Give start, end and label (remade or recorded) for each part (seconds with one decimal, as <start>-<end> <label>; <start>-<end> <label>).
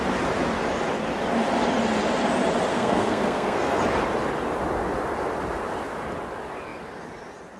0.0-2.7 recorded; 2.7-3.8 remade; 3.8-7.6 recorded